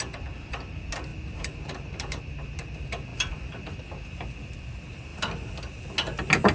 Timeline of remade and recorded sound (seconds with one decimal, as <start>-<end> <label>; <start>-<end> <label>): 0.0-1.1 recorded; 1.1-2.2 remade; 2.2-3.1 recorded; 3.1-3.7 remade; 3.7-5.1 recorded; 5.1-5.6 remade; 5.6-6.5 recorded

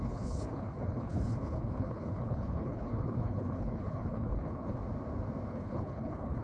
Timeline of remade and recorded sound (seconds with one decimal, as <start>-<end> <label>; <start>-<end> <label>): 0.0-4.8 remade; 4.8-5.5 recorded; 5.5-6.4 remade

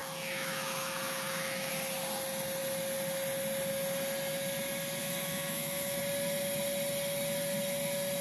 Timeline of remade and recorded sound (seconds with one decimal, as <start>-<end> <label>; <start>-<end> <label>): 0.0-1.7 remade; 1.7-5.0 recorded; 5.0-6.0 remade; 6.0-8.2 recorded

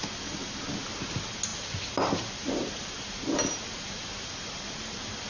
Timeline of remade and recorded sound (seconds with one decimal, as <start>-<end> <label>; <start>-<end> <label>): 0.0-5.3 recorded

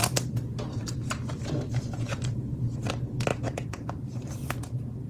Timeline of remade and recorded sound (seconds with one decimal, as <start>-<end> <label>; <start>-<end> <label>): 0.0-2.9 remade; 2.9-3.3 recorded; 3.3-5.1 remade

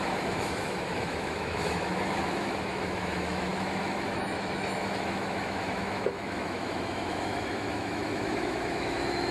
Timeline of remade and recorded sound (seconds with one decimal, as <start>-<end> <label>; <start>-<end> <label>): 0.0-9.3 remade